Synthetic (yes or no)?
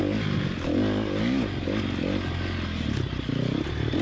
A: no